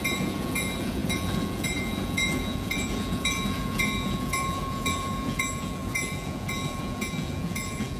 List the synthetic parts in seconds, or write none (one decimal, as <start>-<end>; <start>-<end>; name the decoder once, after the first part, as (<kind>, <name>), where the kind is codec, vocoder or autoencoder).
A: 0.0-8.0 (vocoder, Vocos)